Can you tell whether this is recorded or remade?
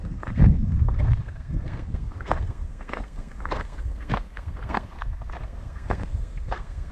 remade